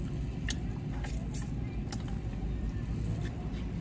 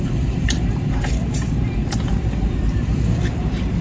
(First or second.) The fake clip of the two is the second